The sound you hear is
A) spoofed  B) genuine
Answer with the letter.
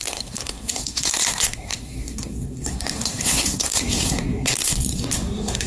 A